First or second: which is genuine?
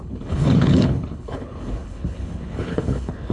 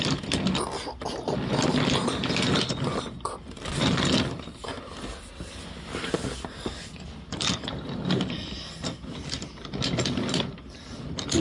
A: second